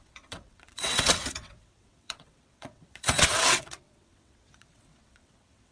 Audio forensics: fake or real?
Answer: fake